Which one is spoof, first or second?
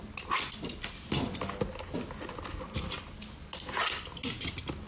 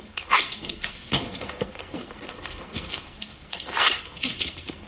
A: second